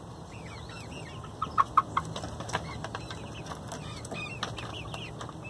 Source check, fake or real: real